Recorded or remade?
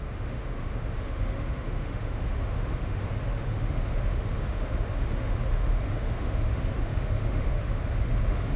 remade